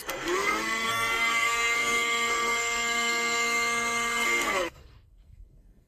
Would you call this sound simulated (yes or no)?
yes